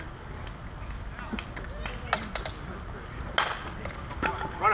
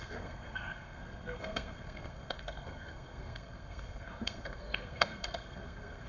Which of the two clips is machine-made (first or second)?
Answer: second